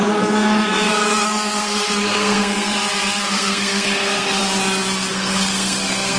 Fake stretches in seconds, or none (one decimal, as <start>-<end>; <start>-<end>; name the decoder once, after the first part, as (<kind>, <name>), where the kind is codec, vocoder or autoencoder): 0.0-4.4 (codec, SNAC); 5.1-6.2